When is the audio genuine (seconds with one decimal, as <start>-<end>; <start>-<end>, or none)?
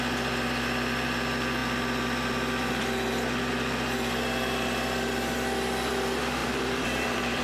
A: 0.0-6.4